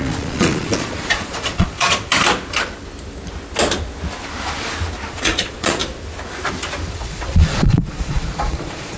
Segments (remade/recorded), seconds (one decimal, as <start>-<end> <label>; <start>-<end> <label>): 0.0-2.1 remade; 2.1-5.1 recorded; 5.1-5.8 remade; 5.8-6.9 recorded; 6.9-9.0 remade